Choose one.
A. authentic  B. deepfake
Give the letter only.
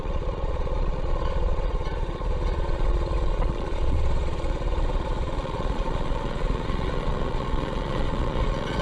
B